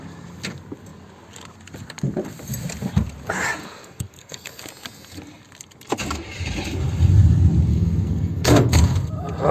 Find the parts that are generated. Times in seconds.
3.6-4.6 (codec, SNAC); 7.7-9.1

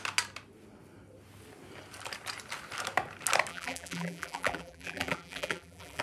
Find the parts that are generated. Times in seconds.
3.5-6.0 (vocoder, BigVGAN v2)

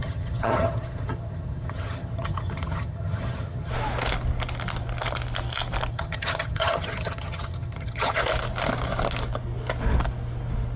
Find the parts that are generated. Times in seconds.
0.0-3.7 (vocoder, HiFi-GAN); 5.9-8.2

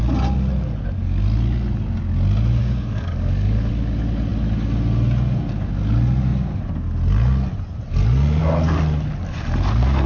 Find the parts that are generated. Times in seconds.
2.6-3.7 (codec, DAC)

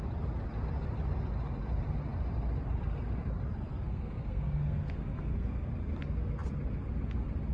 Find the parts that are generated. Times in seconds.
3.7-5.7 (codec, SNAC)

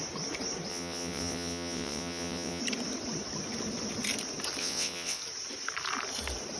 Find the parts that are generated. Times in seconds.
0.7-2.6 (vocoder, WaveNeXt); 4.6-5.2

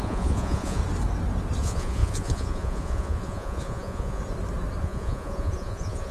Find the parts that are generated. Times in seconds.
0.0-0.8 (vocoder, Vocos); 1.6-4.2; 4.8-6.1

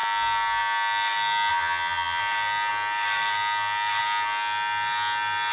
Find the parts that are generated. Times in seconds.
1.5-2.2 (vocoder, HiFi-GAN)